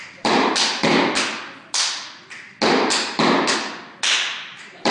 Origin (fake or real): real